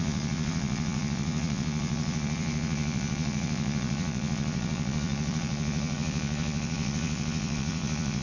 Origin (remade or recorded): remade